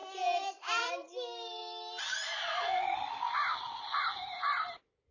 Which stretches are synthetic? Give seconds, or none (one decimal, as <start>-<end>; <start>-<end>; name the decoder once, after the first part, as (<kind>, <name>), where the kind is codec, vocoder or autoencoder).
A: 0.0-0.9 (vocoder, BigVGAN v2)